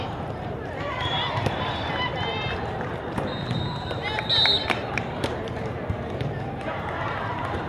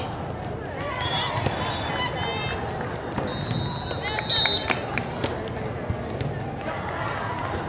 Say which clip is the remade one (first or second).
first